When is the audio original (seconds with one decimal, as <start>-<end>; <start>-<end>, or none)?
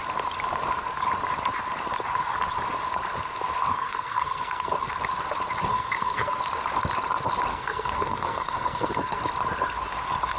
0.0-3.7; 4.9-5.7; 6.4-7.5; 9.2-10.4